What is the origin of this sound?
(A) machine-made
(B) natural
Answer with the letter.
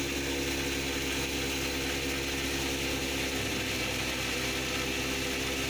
B